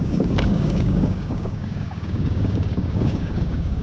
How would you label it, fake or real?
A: fake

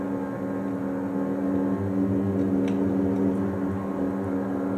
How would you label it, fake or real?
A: real